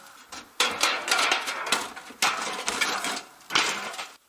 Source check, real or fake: real